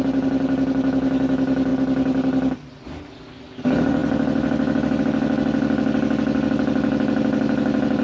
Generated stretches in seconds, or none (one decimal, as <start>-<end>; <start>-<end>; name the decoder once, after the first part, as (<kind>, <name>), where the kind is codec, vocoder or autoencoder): 4.0-5.0 (vocoder, BigVGAN v2)